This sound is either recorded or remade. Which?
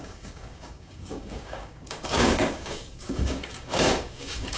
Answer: remade